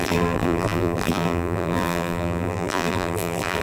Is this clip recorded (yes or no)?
no